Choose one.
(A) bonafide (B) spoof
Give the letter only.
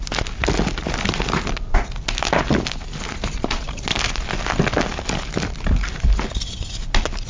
A